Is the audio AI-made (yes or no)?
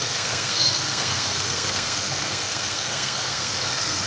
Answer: yes